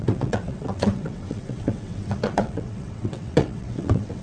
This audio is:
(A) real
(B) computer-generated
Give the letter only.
B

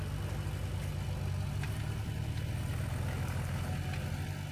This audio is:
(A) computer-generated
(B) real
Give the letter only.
B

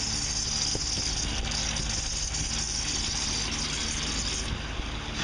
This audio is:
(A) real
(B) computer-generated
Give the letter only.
A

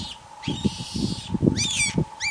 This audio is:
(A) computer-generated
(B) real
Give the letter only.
B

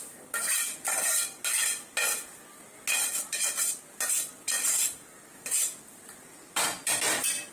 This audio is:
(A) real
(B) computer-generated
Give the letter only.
A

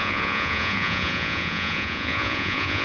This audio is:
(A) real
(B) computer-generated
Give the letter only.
B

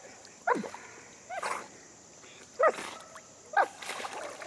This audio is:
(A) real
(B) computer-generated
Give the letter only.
A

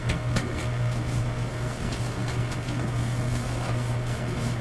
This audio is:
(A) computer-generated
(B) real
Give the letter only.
A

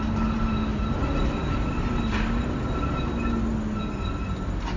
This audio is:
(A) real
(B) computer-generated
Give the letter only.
A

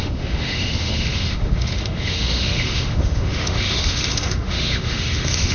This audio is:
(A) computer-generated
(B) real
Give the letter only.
A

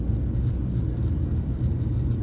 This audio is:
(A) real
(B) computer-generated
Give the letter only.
A